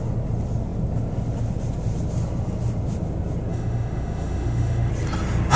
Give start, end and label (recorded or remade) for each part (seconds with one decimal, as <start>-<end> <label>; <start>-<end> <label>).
0.0-3.5 recorded; 3.5-4.9 remade; 4.9-5.6 recorded